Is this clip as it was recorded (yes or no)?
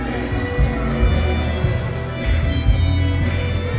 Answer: yes